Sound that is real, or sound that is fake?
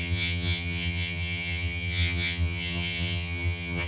fake